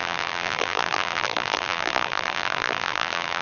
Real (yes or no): no